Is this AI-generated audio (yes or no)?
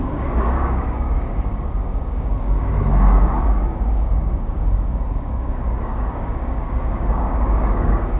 yes